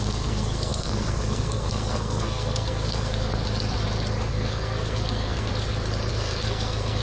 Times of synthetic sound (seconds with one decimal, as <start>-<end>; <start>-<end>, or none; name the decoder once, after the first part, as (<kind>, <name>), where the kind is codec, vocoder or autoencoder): 0.0-3.3 (codec, SNAC); 4.3-5.5; 6.1-7.0